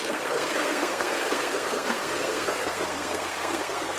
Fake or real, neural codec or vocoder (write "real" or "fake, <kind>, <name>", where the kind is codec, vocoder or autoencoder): fake, codec, SNAC